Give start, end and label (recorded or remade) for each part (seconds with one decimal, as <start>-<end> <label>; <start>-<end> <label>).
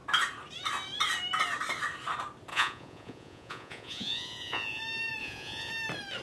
0.0-2.5 recorded; 2.5-4.8 remade; 4.8-5.2 recorded; 5.2-5.7 remade; 5.7-6.2 recorded